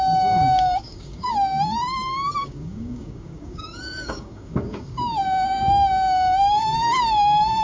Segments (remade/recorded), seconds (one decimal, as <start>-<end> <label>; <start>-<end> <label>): 0.0-7.6 remade